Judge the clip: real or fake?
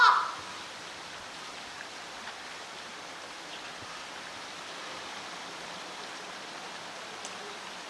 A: real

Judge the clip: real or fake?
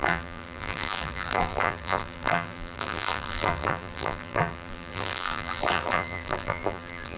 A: fake